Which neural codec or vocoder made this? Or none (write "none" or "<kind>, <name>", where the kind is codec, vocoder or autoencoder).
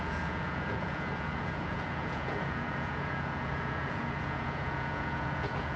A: vocoder, Vocos